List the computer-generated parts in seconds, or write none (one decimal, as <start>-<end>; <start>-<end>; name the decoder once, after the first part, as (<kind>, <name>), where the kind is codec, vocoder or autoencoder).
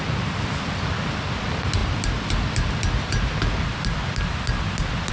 none